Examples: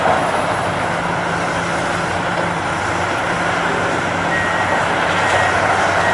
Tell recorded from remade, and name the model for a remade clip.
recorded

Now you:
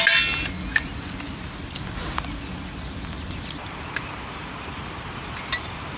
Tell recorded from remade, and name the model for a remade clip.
recorded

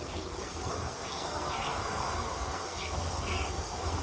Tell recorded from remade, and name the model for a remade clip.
remade, codec, SNAC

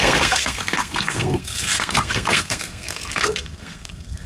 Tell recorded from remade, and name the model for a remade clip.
remade, codec, SNAC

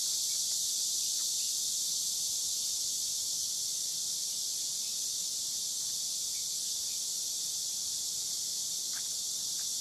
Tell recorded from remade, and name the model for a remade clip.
recorded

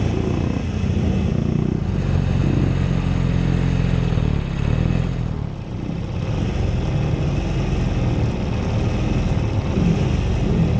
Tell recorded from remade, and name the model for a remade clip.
recorded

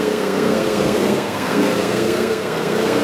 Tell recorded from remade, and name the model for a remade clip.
remade, codec, SNAC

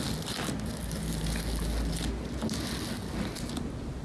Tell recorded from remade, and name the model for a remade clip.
recorded